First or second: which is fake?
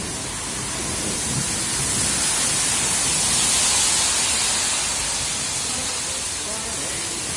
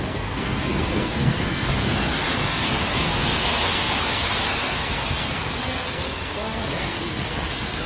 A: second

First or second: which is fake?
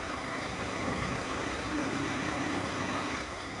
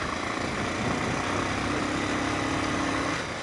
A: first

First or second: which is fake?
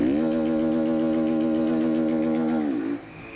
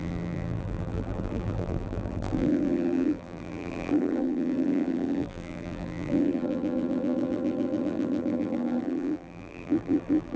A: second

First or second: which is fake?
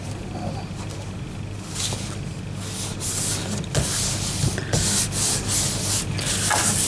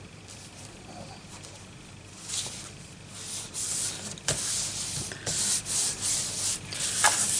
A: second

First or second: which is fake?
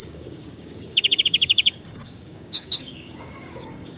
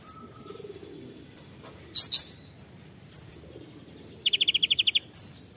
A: first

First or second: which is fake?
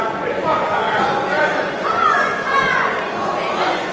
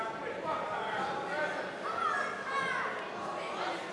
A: first